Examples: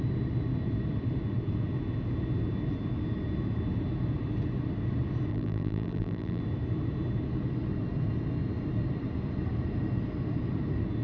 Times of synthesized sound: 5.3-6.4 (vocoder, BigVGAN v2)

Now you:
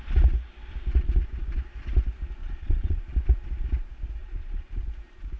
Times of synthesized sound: 2.4-3.0 (vocoder, Vocos); 4.2-4.8

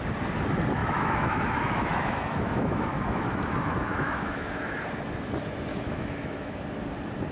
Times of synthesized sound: 0.8-4.8 (autoencoder, DAC-VAE); 5.7-6.6